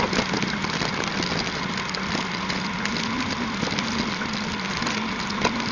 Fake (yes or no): no